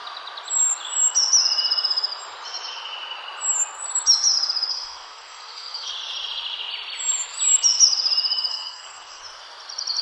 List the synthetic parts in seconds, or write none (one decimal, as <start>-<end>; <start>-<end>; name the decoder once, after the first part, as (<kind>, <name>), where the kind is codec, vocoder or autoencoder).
4.7-5.9 (codec, SNAC); 8.5-9.2